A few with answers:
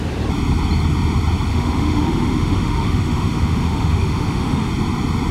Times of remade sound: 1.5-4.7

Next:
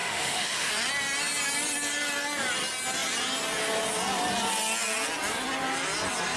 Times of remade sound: 0.0-0.7

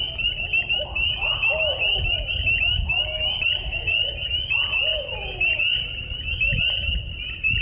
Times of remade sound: none

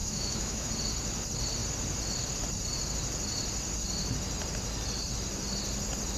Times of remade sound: 0.0-0.7

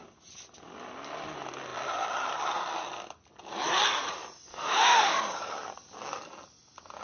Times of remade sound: 4.5-5.2

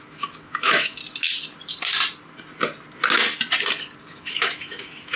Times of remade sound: 0.0-1.0; 4.1-5.2

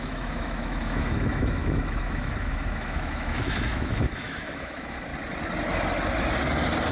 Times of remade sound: 0.0-5.1

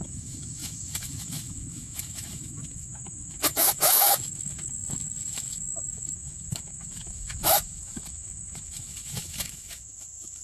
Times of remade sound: 0.0-10.4